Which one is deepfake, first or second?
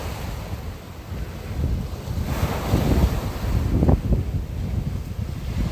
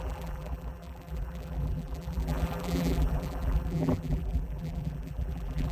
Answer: second